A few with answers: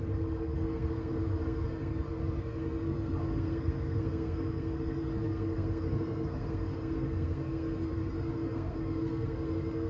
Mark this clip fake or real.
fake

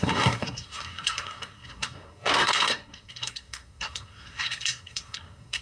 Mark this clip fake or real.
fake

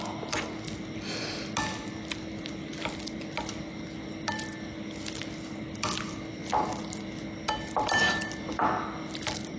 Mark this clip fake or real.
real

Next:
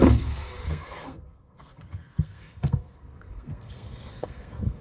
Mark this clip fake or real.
fake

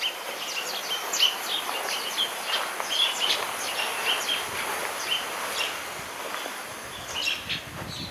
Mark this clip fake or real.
real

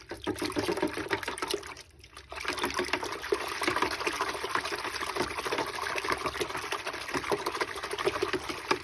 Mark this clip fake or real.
real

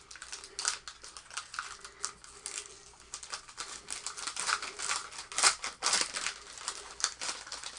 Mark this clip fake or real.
real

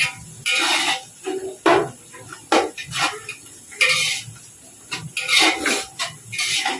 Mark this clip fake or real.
real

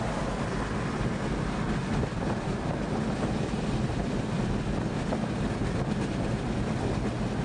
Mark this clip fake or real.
real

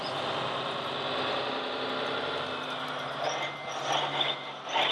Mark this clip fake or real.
real